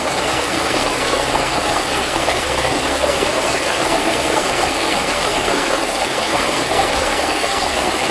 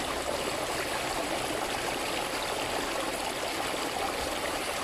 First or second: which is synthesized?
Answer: first